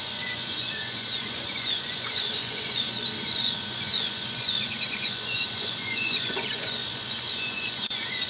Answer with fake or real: fake